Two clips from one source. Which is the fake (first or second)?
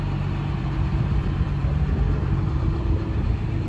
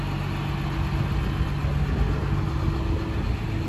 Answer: first